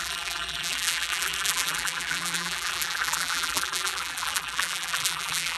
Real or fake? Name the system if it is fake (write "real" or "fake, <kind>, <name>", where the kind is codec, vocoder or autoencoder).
fake, vocoder, BigVGAN v2